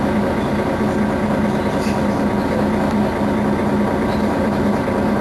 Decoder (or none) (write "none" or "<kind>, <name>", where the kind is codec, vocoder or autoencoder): none